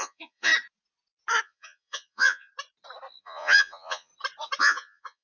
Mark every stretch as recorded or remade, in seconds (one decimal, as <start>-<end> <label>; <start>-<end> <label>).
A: 0.0-0.5 remade; 0.5-1.4 recorded; 1.4-2.5 remade; 2.5-3.2 recorded; 3.2-4.1 remade; 4.1-4.6 recorded; 4.6-5.2 remade